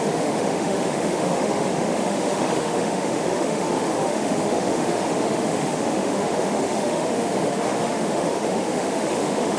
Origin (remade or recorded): remade